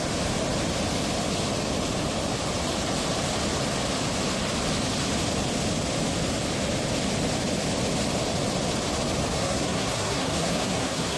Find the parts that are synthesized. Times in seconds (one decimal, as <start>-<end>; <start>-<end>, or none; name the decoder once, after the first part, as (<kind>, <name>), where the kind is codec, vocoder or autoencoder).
9.3-11.2 (codec, SNAC)